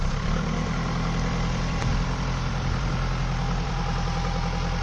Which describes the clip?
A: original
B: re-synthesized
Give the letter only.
B